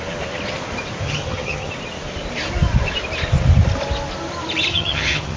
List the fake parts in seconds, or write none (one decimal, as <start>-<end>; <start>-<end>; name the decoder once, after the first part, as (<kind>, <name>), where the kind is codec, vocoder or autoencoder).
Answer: 1.0-1.7 (vocoder, HiFi-GAN); 4.7-5.4